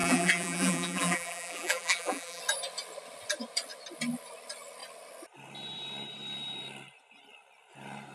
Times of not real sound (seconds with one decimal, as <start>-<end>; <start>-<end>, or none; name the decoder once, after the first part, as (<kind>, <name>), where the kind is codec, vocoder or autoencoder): 0.0-2.4 (vocoder, BigVGAN v2)